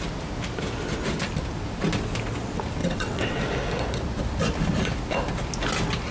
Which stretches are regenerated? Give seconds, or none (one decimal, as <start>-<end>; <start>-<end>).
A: 2.8-3.4